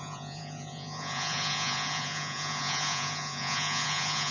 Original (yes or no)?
no